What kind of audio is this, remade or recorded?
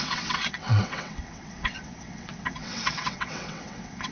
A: remade